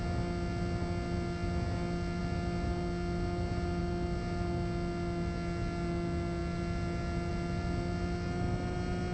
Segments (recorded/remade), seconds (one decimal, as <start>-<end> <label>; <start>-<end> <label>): 0.0-9.1 recorded